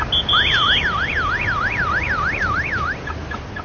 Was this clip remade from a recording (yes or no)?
no